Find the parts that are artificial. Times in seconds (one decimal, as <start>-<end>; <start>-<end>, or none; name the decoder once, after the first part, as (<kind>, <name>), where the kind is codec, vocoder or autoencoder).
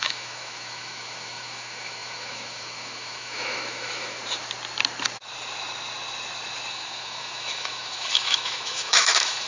0.0-4.2 (autoencoder, DAC-VAE); 6.7-9.5